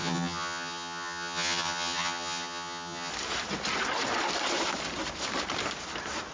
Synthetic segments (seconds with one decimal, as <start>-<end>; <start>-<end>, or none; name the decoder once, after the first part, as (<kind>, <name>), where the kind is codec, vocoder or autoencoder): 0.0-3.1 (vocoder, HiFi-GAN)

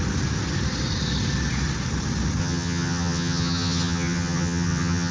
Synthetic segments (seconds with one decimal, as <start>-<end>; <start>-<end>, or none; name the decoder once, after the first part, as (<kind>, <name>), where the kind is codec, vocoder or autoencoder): 2.4-5.1 (vocoder, HiFi-GAN)

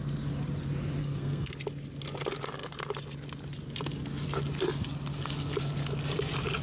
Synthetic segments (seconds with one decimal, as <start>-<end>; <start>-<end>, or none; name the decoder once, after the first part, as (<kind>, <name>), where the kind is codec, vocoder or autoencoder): 1.0-1.5 (codec, SNAC)